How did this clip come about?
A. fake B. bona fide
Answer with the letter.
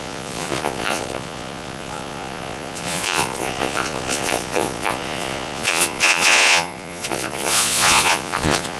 A